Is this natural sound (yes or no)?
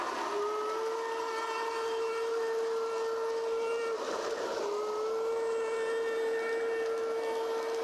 yes